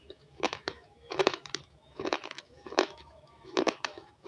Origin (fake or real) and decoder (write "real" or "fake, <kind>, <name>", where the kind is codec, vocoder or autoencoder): fake, autoencoder, DAC-VAE